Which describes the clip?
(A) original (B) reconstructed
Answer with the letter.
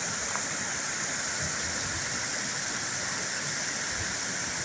A